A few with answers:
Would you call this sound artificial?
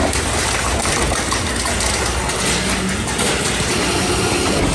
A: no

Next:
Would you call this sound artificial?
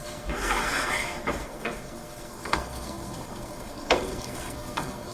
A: yes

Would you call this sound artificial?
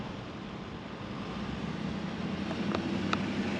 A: no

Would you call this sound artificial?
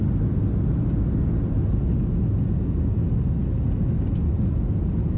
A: no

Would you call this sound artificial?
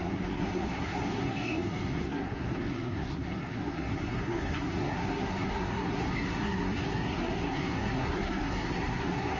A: yes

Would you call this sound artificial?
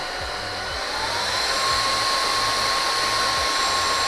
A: no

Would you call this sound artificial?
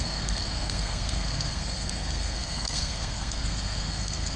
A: yes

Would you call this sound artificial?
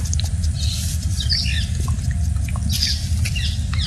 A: no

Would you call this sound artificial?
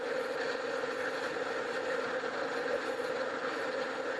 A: no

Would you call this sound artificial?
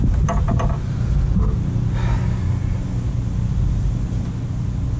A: no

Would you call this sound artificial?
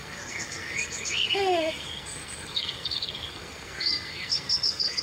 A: yes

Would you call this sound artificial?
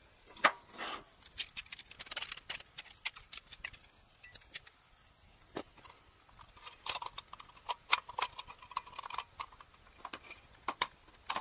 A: no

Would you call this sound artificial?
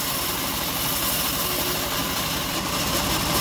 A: no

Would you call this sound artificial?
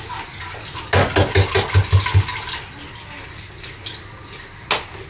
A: no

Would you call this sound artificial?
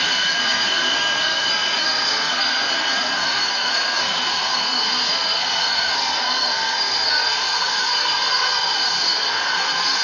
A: yes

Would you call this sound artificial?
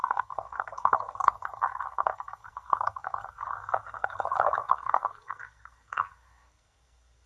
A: yes